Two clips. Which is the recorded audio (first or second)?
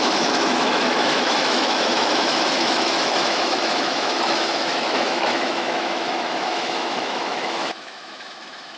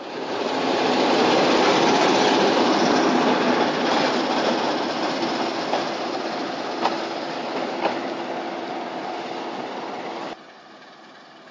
second